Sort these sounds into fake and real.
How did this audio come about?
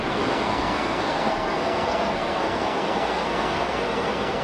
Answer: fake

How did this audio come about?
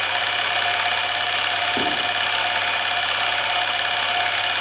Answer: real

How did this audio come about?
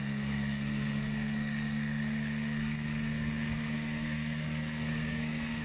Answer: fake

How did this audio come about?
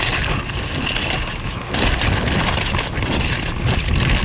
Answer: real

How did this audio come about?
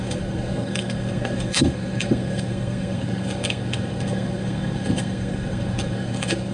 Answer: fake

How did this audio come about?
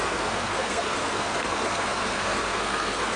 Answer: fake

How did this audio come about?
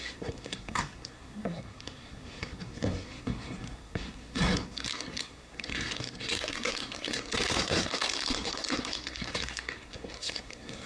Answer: fake